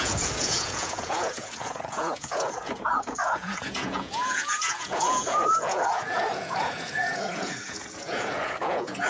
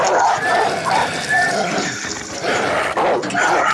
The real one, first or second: second